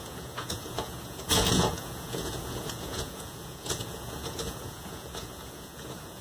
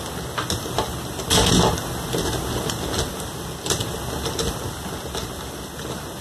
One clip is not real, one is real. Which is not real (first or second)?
first